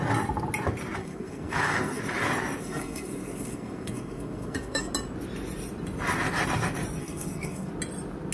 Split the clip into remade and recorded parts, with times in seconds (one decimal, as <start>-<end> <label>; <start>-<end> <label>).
0.0-1.0 recorded; 1.0-2.0 remade; 2.0-2.6 recorded; 2.6-4.9 remade; 4.9-7.0 recorded; 7.0-7.7 remade; 7.7-8.3 recorded